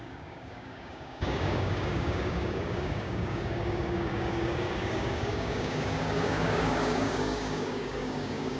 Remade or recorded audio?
remade